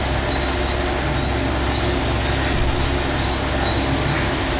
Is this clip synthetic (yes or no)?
no